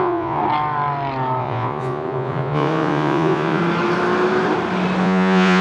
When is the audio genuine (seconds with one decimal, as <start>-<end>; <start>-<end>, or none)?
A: 0.4-1.4; 3.6-5.0